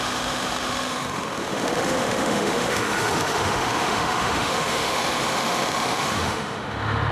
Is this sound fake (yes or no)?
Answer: yes